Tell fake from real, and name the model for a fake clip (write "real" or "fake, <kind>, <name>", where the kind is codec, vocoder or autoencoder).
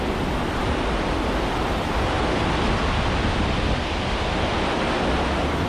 real